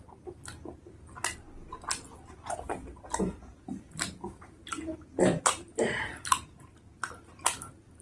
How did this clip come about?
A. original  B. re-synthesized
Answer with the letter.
A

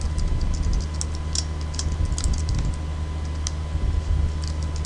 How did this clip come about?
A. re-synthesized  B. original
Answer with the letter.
B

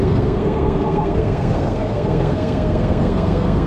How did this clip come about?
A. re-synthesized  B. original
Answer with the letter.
A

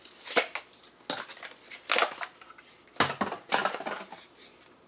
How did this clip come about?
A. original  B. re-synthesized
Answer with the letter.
A